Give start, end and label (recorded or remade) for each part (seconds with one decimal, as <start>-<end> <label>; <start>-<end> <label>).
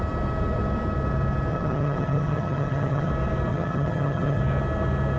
0.0-1.5 recorded; 1.5-3.1 remade; 3.1-3.5 recorded; 3.5-4.4 remade; 4.4-5.2 recorded